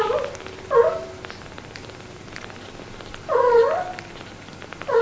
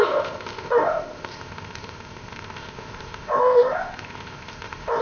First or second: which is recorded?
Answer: first